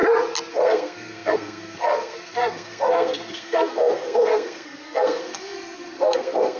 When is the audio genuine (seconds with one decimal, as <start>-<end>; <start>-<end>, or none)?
0.0-0.5